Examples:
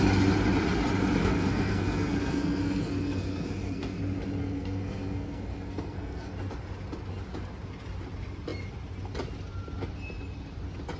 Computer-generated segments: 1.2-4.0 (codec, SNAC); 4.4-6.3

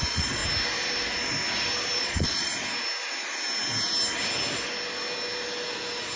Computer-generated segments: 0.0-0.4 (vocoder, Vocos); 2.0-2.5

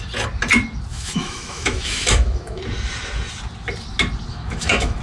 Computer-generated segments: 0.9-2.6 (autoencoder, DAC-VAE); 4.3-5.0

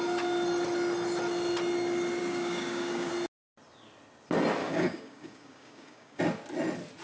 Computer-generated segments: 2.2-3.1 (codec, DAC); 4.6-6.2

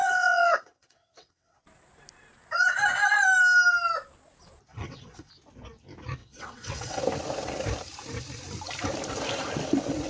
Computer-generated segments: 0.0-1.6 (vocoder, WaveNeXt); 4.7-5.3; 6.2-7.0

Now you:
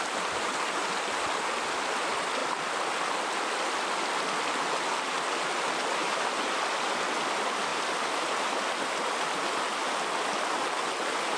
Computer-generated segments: 6.0-6.8 (vocoder, BigVGAN v2)